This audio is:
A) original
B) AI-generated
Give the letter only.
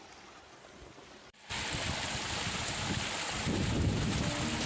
A